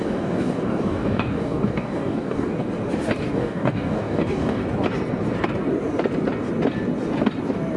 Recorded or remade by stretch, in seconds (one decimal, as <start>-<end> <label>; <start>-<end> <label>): 0.0-2.6 remade; 2.6-3.3 recorded; 3.3-4.6 remade; 4.6-7.8 recorded